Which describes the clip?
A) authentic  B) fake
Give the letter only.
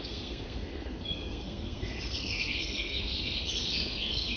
B